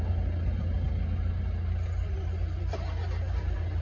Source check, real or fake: real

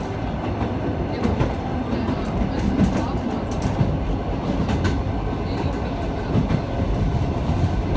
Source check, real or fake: real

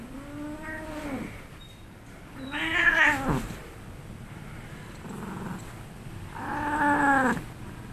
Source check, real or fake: real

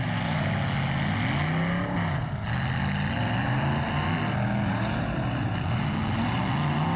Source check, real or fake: real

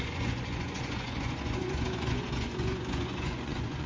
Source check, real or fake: fake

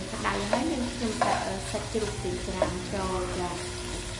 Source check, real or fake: real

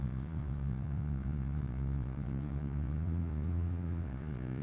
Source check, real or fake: fake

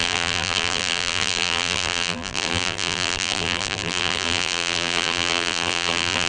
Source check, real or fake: fake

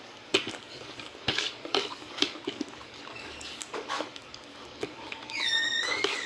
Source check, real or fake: fake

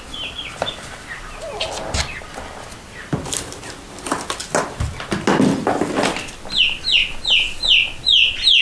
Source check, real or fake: real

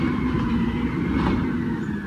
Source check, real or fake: real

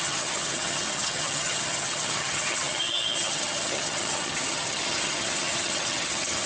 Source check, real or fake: fake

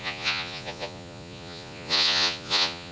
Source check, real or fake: fake